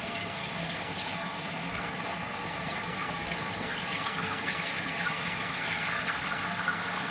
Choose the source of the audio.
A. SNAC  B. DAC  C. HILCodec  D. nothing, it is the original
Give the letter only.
A